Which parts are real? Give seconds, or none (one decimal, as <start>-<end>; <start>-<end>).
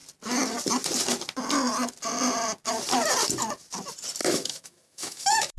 0.0-4.2